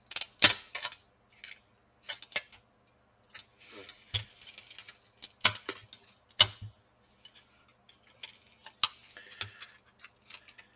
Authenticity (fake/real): real